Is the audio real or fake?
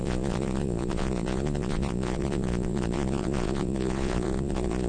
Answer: fake